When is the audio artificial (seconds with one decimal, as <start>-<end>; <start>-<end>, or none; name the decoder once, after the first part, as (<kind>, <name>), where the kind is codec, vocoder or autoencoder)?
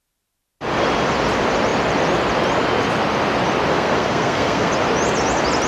3.7-4.7 (codec, SNAC)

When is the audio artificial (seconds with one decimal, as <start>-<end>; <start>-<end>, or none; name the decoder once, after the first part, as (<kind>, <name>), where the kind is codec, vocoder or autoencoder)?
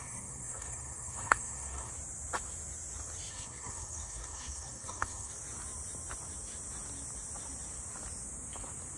0.0-1.9 (codec, SNAC); 3.3-5.3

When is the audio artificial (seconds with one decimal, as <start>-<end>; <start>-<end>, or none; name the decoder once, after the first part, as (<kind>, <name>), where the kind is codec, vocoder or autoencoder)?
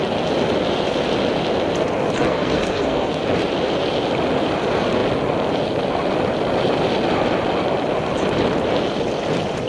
2.2-3.2 (codec, SNAC)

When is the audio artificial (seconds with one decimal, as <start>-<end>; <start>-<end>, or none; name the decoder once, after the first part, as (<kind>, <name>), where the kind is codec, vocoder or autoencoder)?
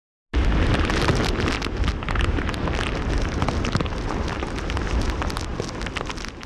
none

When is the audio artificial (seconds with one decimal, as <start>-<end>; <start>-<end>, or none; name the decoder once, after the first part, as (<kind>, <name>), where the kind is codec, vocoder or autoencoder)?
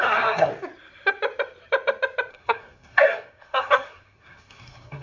0.0-0.5 (codec, SNAC); 2.3-5.0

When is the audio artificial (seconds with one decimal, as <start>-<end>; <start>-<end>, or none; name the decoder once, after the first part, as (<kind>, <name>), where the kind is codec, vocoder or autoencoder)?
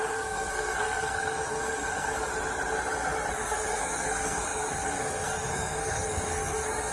0.0-2.3 (codec, SNAC); 3.3-6.9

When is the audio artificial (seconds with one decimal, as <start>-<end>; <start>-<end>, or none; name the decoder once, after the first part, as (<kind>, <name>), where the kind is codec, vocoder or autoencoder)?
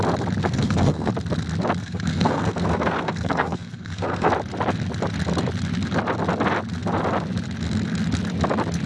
0.4-1.1 (codec, SNAC); 1.8-4.3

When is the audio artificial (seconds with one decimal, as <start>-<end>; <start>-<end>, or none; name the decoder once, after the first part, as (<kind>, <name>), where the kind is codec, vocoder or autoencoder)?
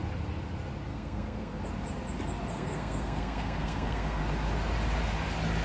0.9-1.6 (codec, SNAC); 2.5-4.2